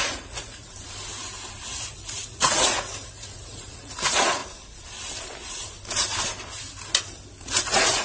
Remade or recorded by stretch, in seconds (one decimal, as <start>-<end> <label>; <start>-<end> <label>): 0.0-0.7 remade; 0.7-1.6 recorded; 1.6-4.4 remade; 4.4-7.4 recorded; 7.4-8.0 remade